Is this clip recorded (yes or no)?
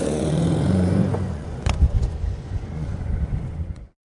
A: no